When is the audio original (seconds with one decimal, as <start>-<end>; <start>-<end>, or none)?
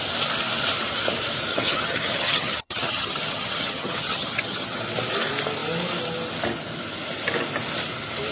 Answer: 0.0-1.5; 4.8-8.3